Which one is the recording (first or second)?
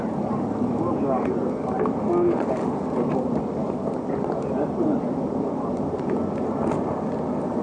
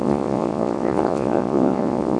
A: first